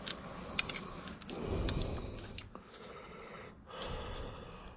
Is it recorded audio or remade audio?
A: recorded